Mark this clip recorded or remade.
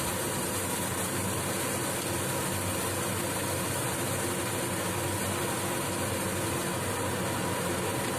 recorded